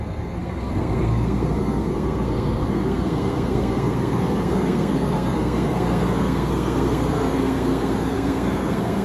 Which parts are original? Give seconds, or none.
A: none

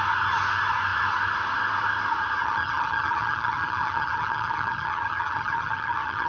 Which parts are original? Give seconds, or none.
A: 0.0-2.4

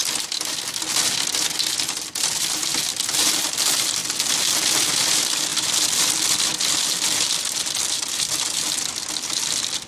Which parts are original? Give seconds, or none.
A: 0.0-1.7; 4.0-4.6

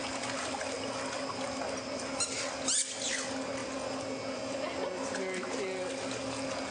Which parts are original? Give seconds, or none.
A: 0.0-6.7

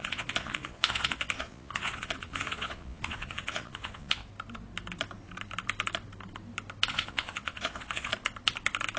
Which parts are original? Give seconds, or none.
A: 4.2-6.9; 8.1-9.0

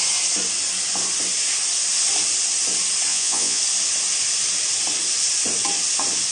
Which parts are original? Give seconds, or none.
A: 0.0-3.1; 3.6-6.3

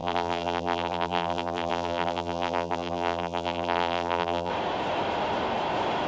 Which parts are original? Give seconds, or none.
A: 4.5-6.1